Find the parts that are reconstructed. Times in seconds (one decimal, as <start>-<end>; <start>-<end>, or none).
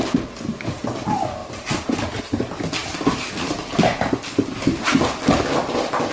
1.4-2.2